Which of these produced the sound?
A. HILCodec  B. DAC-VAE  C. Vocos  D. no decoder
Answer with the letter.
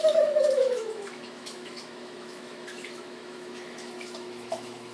B